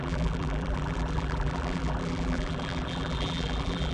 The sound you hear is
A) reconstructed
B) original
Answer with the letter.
A